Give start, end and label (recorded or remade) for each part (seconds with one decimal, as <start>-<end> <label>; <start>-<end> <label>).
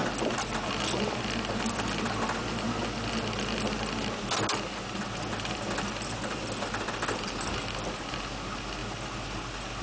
0.0-9.8 recorded